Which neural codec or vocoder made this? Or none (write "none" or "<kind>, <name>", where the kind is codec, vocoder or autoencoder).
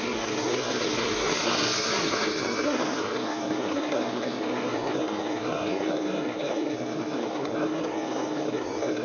codec, SNAC